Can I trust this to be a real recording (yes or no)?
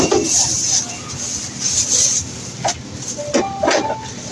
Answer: yes